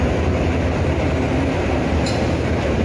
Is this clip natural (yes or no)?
no